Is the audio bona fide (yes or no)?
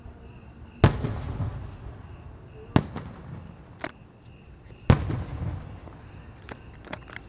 yes